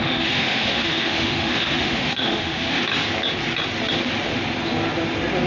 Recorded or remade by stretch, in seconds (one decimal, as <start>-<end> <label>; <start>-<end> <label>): 0.0-2.8 remade; 2.8-5.5 recorded